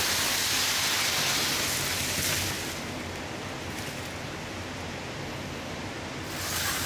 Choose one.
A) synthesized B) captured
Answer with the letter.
B